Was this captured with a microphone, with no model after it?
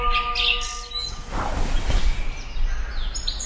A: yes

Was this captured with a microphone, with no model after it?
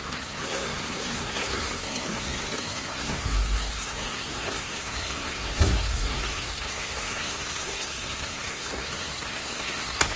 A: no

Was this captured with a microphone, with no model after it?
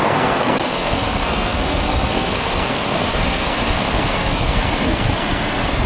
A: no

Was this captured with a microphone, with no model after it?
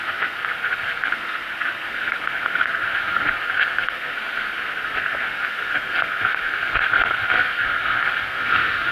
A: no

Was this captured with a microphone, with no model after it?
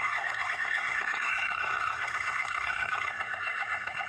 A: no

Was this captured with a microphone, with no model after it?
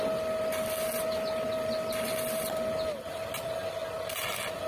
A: yes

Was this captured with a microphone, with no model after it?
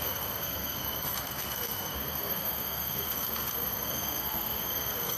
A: no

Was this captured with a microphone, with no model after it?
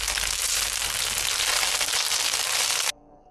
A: yes